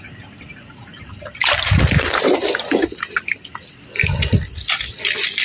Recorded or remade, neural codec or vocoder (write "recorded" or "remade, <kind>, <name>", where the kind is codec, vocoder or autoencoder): recorded